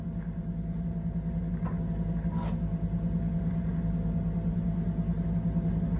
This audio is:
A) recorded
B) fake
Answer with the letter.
A